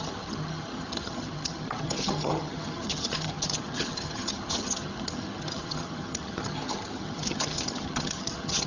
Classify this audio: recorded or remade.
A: remade